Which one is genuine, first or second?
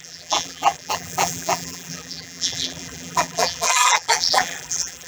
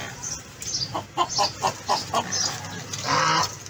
second